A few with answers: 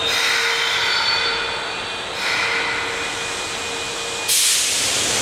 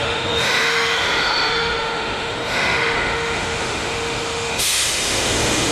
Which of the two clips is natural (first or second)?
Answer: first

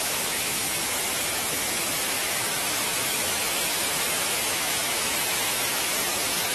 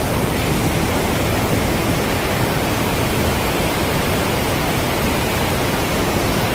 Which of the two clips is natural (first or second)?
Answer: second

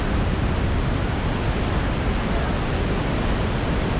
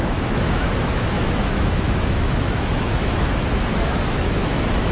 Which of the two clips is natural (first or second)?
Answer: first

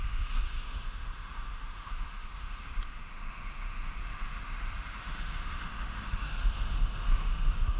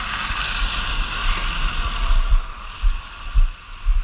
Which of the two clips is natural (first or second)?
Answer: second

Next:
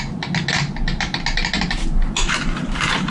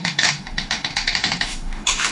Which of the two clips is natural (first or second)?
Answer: first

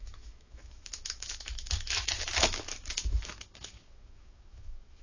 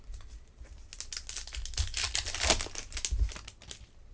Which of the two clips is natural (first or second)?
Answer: second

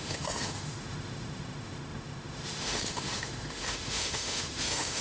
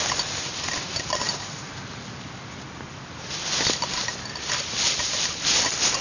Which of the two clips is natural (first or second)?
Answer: second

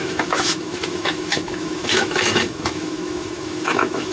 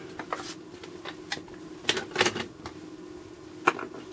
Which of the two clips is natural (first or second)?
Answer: second